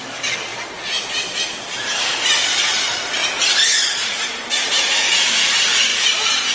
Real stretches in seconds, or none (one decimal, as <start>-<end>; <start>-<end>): 0.0-3.2; 5.5-5.9